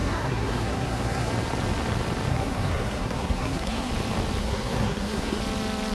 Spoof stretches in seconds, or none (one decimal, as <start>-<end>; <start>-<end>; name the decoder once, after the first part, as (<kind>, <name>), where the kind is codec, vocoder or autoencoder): 0.0-1.3 (codec, SNAC); 2.3-3.9; 4.4-5.4